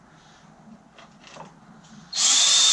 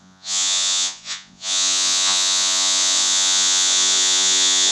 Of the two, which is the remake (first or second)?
second